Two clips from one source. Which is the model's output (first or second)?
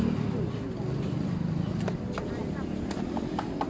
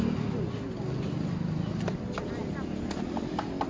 first